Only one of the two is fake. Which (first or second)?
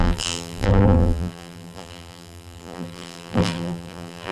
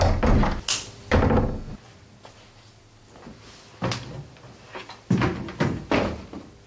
first